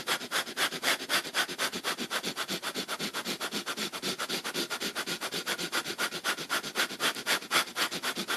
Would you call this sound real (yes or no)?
yes